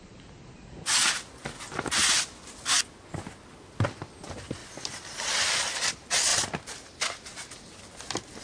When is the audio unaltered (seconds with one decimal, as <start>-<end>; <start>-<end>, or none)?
0.0-4.6; 5.3-8.4